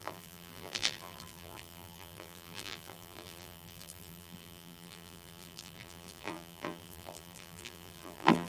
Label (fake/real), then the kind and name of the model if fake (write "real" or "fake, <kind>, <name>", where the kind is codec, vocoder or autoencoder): fake, vocoder, BigVGAN v2